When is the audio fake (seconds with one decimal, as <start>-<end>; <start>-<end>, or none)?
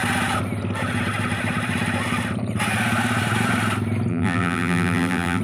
4.1-5.4